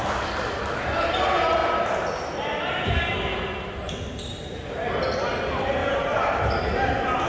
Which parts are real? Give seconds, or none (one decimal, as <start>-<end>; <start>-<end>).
0.0-5.8; 6.4-7.3